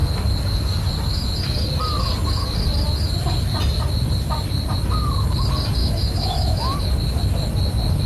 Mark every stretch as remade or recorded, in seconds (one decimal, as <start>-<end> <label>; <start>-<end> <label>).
0.0-5.8 recorded; 5.8-6.8 remade; 6.8-8.1 recorded